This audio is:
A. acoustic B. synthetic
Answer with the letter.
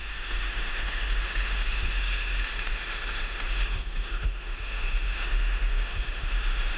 B